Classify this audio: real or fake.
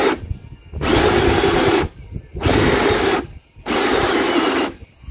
real